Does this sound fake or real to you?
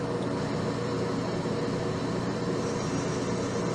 real